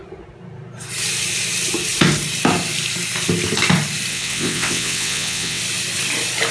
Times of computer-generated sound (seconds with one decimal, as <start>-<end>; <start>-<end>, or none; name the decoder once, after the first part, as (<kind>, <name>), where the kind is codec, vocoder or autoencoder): 4.1-5.6 (vocoder, WaveNeXt)

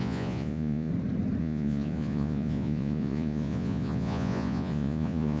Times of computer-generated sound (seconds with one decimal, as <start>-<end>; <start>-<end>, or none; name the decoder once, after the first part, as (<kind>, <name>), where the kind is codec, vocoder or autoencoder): 0.0-0.9 (vocoder, Vocos); 1.4-5.4

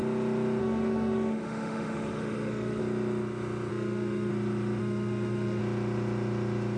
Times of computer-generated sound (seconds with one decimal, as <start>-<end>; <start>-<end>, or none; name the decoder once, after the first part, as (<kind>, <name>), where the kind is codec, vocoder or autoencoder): 0.6-2.8 (autoencoder, DAC-VAE); 3.7-4.3; 4.8-5.6

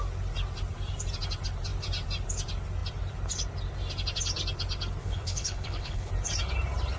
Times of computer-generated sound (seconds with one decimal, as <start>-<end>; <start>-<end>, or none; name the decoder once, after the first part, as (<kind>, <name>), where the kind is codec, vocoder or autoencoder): 5.0-6.1 (codec, HILCodec)